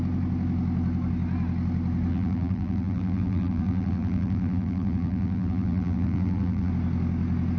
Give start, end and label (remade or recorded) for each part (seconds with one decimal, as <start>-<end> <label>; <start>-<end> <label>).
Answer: 0.0-2.1 recorded; 2.1-6.7 remade; 6.7-7.6 recorded